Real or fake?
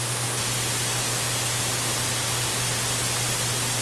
real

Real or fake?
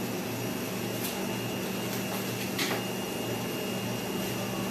real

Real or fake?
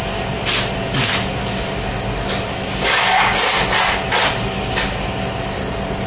real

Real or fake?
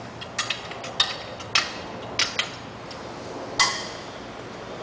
real